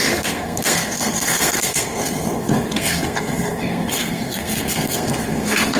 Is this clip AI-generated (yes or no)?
yes